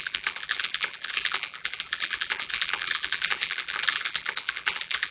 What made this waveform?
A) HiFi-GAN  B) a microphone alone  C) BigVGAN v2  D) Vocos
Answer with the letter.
C